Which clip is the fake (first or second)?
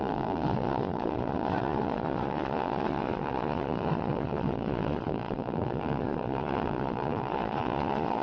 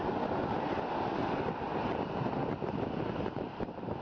first